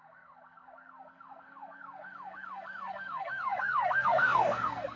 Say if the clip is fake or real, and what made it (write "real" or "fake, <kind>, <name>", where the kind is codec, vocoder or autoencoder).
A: fake, codec, SNAC